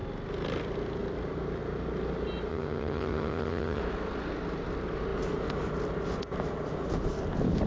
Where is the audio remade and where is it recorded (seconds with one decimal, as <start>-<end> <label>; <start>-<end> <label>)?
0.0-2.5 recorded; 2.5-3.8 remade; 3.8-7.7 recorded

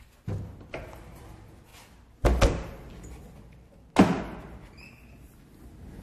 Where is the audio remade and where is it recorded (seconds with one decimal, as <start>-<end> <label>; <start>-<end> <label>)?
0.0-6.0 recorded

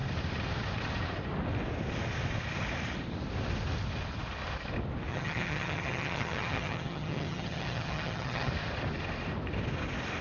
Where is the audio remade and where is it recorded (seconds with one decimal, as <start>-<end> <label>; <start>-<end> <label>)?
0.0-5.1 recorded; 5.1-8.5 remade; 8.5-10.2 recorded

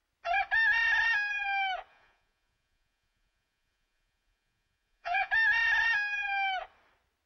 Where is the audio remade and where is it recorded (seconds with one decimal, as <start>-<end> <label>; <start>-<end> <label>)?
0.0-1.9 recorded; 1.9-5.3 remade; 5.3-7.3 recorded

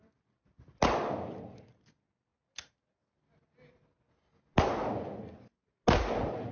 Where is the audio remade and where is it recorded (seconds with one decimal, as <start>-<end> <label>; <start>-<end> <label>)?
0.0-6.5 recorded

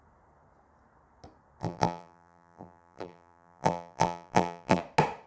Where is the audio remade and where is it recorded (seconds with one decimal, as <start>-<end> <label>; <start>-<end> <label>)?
0.0-1.6 recorded; 1.6-4.8 remade; 4.8-5.3 recorded

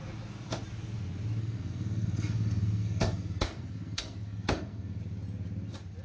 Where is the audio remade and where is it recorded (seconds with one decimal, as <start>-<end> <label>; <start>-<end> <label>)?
0.0-1.4 recorded; 1.4-5.0 remade; 5.0-6.0 recorded